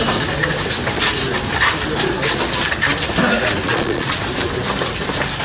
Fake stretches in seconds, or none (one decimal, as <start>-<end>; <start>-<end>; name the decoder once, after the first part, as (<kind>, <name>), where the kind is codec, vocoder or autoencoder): 3.6-4.2 (vocoder, Vocos)